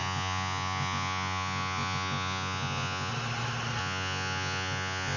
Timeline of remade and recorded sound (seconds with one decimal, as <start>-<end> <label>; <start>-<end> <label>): 0.0-3.1 remade; 3.1-3.8 recorded; 3.8-5.2 remade